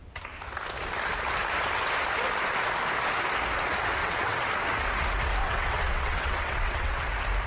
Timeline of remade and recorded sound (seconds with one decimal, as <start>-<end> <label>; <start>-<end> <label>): 0.0-4.0 recorded; 4.0-4.5 remade; 4.5-5.4 recorded; 5.4-7.1 remade; 7.1-7.5 recorded